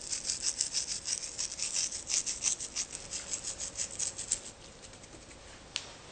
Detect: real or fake real